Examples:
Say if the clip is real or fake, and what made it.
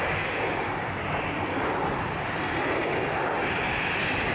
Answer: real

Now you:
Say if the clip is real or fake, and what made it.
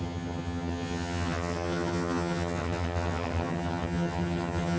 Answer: fake, vocoder, HiFi-GAN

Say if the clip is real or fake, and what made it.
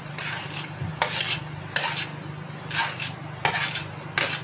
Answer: real